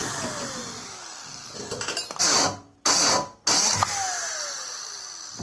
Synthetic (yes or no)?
no